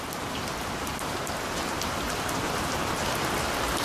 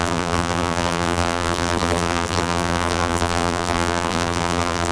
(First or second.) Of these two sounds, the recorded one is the first